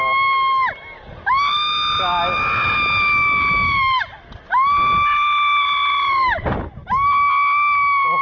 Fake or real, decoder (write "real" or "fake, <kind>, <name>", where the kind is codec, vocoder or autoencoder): real